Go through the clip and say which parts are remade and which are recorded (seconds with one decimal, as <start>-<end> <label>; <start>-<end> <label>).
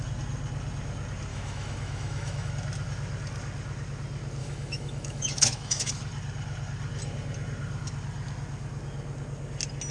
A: 0.0-1.3 recorded; 1.3-2.5 remade; 2.5-4.4 recorded; 4.4-5.9 remade; 5.9-9.9 recorded